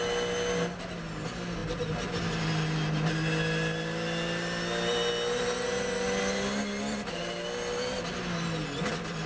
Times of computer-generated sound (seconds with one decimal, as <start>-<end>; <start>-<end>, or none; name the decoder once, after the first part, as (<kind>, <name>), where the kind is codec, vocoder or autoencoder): none